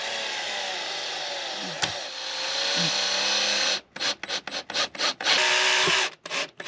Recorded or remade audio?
recorded